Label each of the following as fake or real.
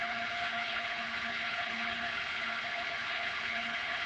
fake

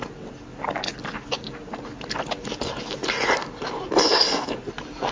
real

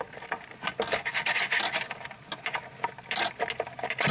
real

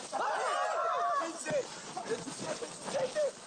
real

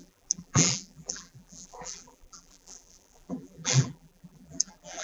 fake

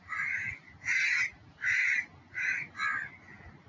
real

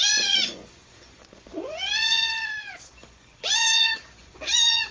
fake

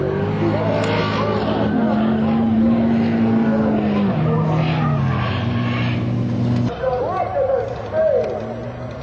real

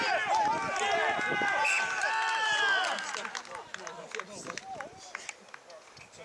real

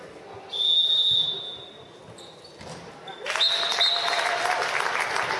real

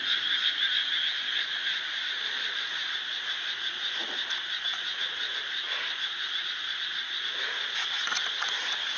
fake